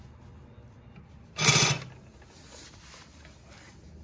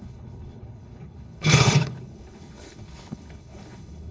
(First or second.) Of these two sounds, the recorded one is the first